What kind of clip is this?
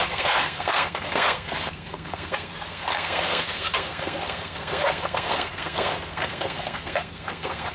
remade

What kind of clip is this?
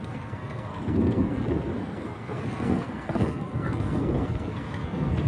remade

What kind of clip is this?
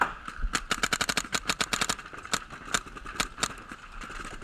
recorded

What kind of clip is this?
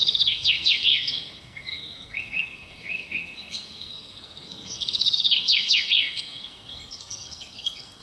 remade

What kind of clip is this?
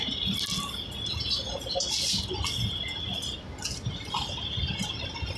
recorded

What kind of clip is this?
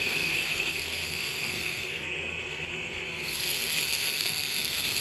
remade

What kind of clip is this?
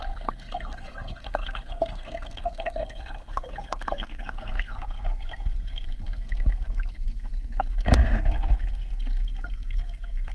remade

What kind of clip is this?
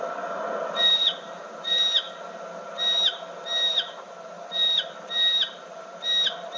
recorded